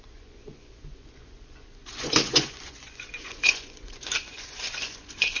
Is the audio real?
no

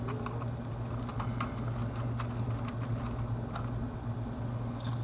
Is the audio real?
yes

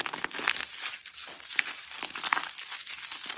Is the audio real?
yes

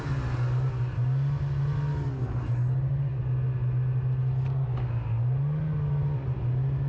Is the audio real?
yes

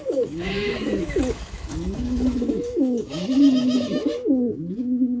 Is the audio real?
no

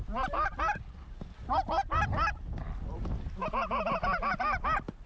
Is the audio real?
yes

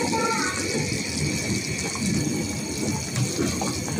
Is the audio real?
yes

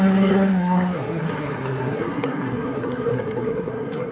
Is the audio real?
no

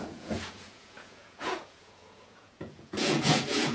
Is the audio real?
no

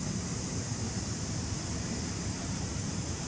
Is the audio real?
no